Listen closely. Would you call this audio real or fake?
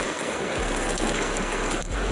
fake